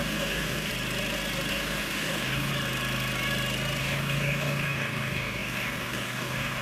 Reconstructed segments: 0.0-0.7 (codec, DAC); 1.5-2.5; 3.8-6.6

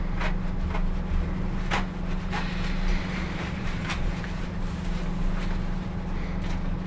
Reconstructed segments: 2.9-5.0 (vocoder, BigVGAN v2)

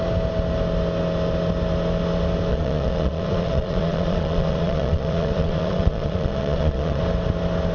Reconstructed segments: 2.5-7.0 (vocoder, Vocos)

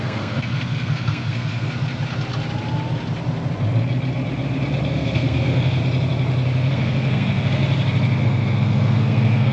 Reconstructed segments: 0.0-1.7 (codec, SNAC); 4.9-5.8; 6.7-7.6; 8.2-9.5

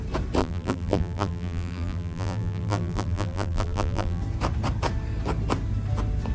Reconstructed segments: 0.4-4.2 (vocoder, BigVGAN v2)